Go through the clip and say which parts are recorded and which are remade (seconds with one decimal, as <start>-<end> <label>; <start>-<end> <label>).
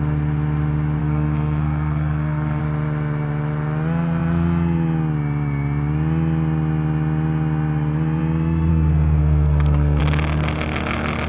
0.0-1.0 recorded; 1.0-2.6 remade; 2.6-8.7 recorded; 8.7-10.0 remade; 10.0-11.3 recorded